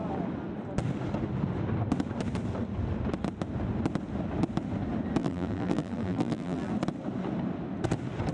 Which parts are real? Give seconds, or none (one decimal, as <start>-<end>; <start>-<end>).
0.0-5.2; 6.7-8.3